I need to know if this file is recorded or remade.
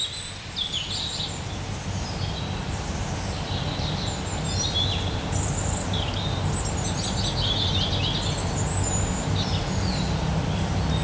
recorded